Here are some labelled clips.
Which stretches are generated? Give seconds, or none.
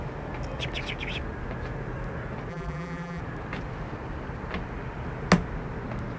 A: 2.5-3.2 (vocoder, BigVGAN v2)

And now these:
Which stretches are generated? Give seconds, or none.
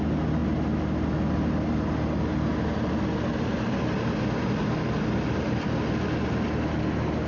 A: none